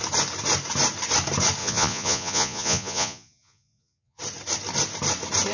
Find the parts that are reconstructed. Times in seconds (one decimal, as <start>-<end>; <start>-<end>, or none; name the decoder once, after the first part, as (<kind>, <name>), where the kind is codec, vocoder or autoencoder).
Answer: 1.6-4.2 (vocoder, Vocos)